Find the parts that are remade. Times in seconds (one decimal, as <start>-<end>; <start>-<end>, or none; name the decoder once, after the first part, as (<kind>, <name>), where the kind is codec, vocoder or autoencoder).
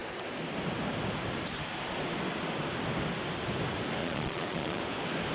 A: 4.0-4.8 (vocoder, Vocos)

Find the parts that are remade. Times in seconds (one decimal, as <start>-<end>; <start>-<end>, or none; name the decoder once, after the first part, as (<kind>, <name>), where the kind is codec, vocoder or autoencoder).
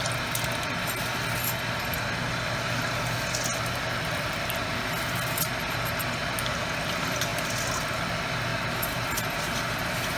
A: none